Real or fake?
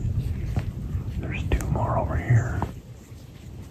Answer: real